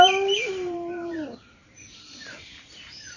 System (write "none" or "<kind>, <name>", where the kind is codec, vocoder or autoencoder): vocoder, BigVGAN v2